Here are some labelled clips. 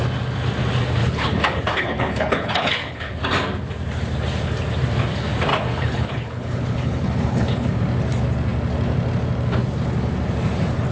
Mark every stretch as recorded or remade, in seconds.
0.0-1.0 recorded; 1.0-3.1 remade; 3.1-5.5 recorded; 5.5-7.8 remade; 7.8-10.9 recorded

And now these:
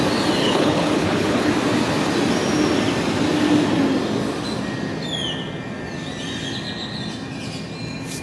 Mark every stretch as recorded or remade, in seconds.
0.0-0.4 recorded; 0.4-1.5 remade; 1.5-8.2 recorded

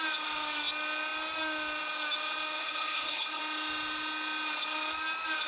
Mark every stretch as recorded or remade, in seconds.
0.0-2.6 recorded; 2.6-3.4 remade; 3.4-5.5 recorded

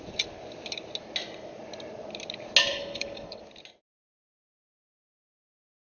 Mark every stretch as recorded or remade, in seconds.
0.0-2.7 recorded; 2.7-3.4 remade; 3.4-5.8 recorded

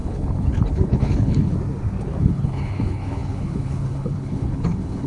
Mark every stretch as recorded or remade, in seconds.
0.0-1.5 remade; 1.5-2.2 recorded; 2.2-5.1 remade

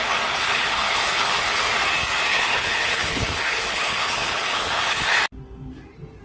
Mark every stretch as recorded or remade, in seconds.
0.0-0.4 recorded; 0.4-1.6 remade; 1.6-2.3 recorded; 2.3-5.2 remade; 5.2-6.2 recorded

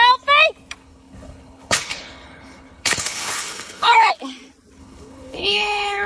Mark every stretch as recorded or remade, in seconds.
0.0-0.8 recorded; 0.8-4.1 remade; 4.1-4.8 recorded; 4.8-6.1 remade

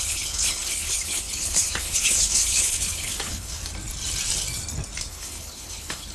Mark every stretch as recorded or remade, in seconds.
0.0-3.6 remade; 3.6-5.1 recorded; 5.1-6.1 remade